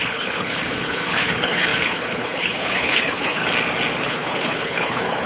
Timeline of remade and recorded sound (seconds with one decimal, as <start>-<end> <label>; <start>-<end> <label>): 0.0-3.4 remade; 3.4-4.0 recorded; 4.0-5.3 remade